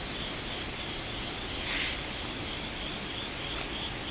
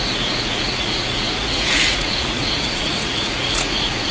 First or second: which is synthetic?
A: second